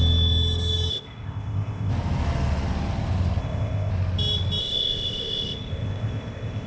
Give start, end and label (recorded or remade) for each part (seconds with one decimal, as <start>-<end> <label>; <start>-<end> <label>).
0.0-0.9 recorded; 0.9-1.9 remade; 1.9-3.4 recorded; 3.4-3.9 remade; 3.9-4.6 recorded; 4.6-6.7 remade